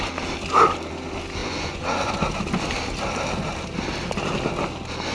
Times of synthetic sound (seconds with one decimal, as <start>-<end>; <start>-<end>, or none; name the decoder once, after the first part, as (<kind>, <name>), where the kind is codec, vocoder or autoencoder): 1.4-2.1 (vocoder, Vocos)